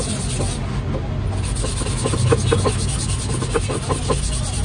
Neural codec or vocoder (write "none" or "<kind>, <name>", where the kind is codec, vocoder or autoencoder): none